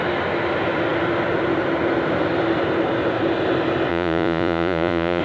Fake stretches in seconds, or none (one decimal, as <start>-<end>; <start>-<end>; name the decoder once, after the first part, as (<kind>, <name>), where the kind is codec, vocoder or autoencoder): 3.9-5.2 (vocoder, Vocos)